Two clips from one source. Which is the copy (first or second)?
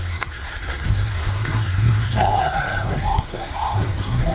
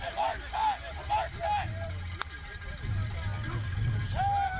first